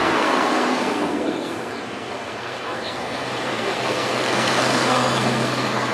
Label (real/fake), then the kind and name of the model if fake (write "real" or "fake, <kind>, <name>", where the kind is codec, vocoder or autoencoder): fake, codec, SNAC